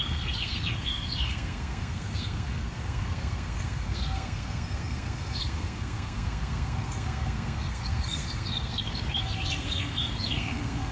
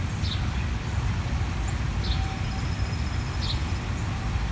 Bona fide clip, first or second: second